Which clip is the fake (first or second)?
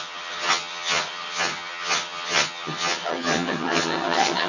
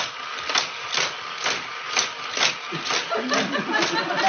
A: first